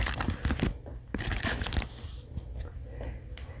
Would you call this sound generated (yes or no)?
no